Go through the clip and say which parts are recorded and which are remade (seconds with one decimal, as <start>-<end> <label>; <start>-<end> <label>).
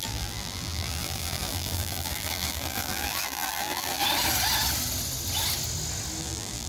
0.0-4.0 remade; 4.0-6.2 recorded; 6.2-6.7 remade